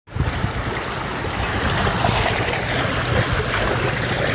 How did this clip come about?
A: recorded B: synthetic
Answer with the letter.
A